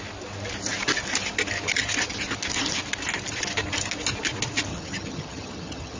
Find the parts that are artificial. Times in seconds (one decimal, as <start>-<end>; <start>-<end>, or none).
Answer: 4.7-6.0

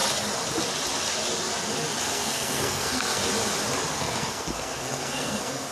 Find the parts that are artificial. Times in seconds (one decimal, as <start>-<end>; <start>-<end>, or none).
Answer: 2.0-3.2; 3.9-5.7

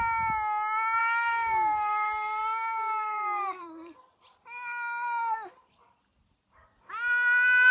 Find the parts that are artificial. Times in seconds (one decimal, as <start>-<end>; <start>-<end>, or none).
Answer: 1.0-3.6